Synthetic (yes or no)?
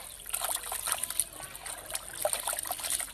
no